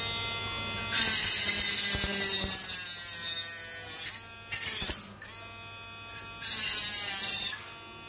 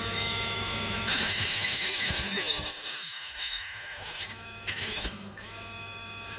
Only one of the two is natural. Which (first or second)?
first